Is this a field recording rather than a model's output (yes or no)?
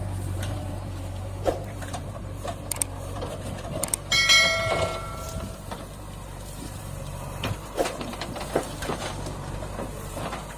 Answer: no